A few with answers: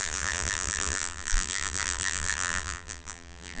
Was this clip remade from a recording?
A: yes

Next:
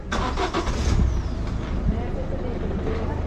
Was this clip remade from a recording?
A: no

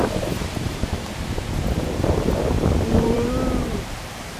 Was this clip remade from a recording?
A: yes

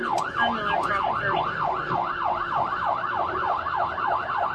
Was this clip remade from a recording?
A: no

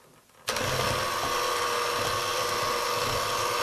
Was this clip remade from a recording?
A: no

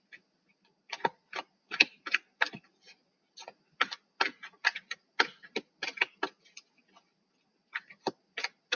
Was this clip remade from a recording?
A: no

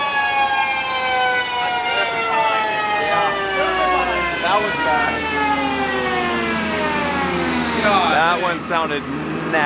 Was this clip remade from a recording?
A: no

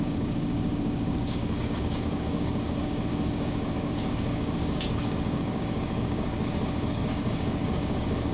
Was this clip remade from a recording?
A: yes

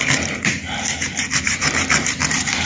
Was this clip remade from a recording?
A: yes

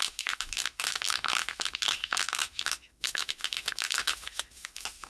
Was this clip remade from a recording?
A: yes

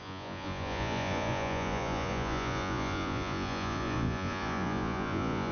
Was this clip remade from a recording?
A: yes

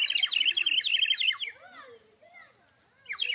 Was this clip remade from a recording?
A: no